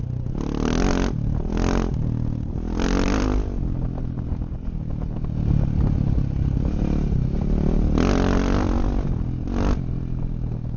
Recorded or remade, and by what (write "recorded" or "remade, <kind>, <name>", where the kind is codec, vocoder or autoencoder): recorded